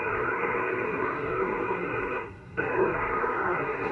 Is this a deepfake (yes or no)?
yes